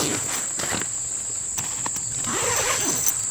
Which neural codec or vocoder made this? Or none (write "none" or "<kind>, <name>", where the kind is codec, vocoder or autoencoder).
none